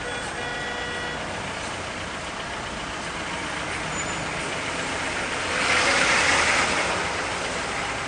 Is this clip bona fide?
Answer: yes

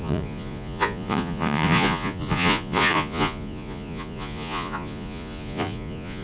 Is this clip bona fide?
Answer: no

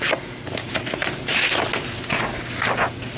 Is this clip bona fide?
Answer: yes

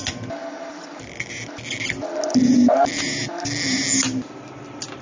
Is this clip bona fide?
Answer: yes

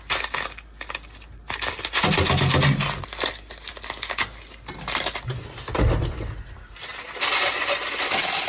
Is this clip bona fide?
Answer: yes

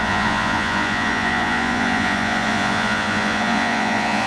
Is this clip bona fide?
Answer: no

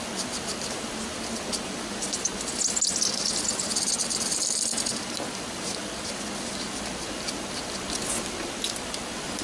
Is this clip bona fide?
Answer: yes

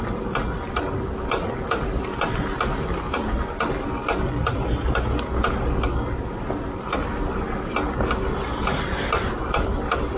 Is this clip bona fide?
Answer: yes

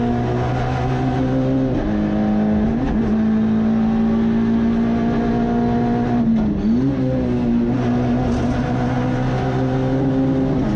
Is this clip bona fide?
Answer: yes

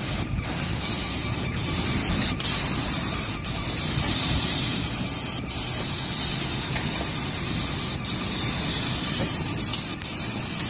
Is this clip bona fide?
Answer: yes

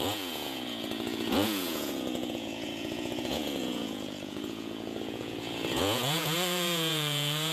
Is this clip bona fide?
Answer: no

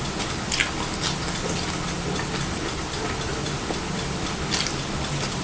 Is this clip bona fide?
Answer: yes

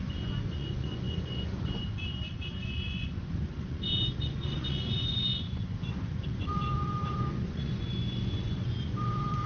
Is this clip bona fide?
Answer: no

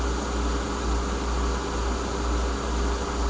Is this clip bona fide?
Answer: yes